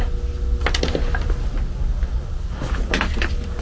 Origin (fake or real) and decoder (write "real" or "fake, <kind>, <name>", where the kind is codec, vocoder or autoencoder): real